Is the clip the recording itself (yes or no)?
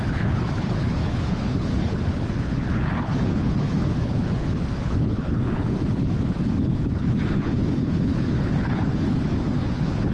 no